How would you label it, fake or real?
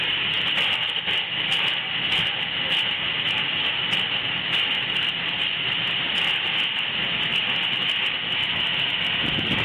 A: real